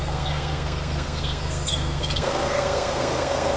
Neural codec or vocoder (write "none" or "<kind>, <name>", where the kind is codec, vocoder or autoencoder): codec, SNAC